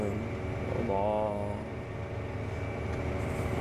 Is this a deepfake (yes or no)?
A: no